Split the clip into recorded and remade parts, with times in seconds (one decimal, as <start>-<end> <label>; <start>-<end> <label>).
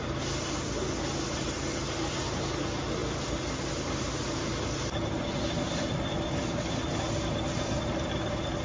0.0-8.6 recorded